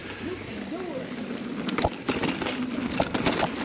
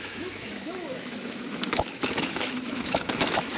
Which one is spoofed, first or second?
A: second